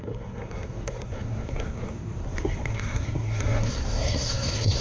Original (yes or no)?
no